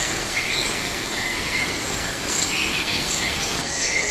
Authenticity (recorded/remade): remade